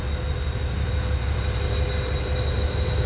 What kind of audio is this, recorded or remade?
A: recorded